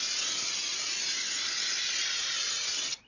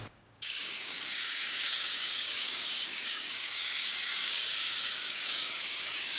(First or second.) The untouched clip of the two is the first